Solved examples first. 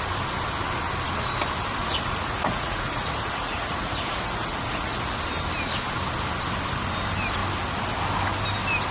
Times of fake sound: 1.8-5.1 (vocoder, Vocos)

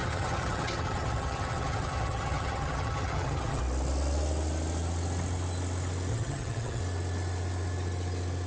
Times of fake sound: 0.0-3.6 (vocoder, HiFi-GAN); 6.1-6.8

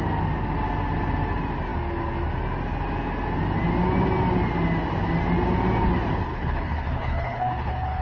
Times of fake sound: 6.3-8.0 (codec, HILCodec)

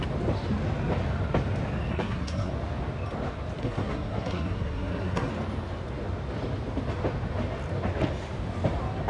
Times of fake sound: 1.9-2.5 (codec, SNAC); 3.6-5.3

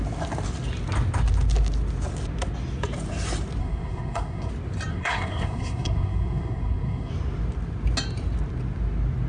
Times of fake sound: 3.6-4.5 (codec, SNAC); 4.9-7.1

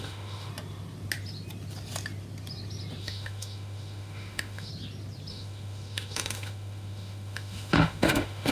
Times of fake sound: 0.0-0.5 (autoencoder, DAC-VAE); 3.0-4.7; 5.3-8.5